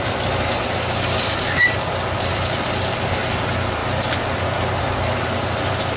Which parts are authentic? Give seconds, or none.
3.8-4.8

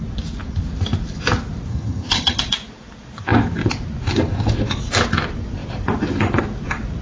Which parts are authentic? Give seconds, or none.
0.0-1.7; 2.4-7.0

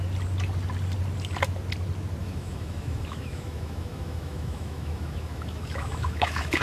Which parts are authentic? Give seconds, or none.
0.0-2.2